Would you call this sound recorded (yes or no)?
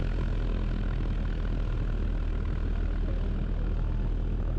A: yes